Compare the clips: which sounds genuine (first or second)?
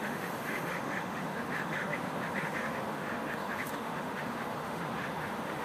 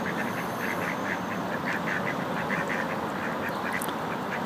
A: second